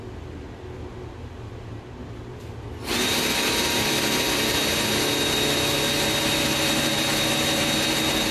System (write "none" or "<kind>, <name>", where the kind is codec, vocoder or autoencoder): none